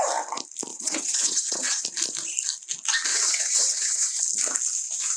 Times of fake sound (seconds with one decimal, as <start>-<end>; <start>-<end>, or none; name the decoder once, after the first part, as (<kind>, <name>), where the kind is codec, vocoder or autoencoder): 0.7-1.8 (vocoder, WaveNeXt); 3.1-4.2